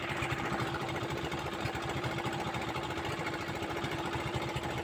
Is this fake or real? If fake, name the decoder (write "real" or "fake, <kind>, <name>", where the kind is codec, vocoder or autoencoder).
fake, vocoder, BigVGAN v2